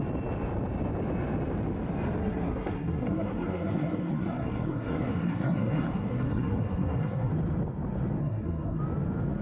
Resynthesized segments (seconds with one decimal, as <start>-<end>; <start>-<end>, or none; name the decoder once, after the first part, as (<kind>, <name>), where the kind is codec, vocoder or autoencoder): 2.2-7.3 (codec, SNAC); 8.2-8.8